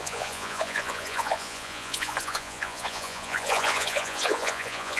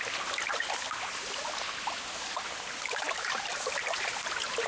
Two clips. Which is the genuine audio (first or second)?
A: second